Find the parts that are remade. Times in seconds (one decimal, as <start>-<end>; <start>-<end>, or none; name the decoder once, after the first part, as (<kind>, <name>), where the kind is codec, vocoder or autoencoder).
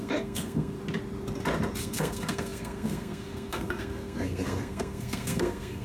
0.0-0.8 (codec, SNAC); 1.8-5.8